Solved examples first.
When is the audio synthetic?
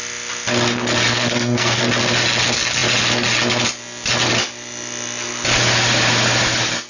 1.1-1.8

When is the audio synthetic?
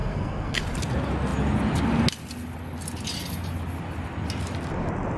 0.0-0.6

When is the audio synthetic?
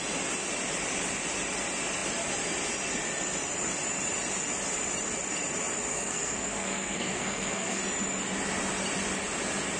5.9-7.8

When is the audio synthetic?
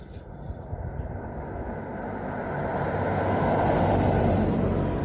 none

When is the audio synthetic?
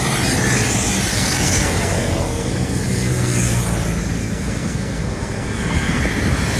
1.1-3.6; 4.2-6.0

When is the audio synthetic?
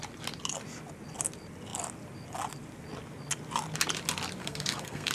4.4-5.1